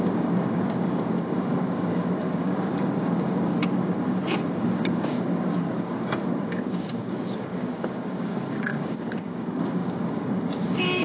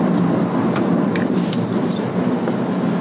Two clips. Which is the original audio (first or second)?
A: second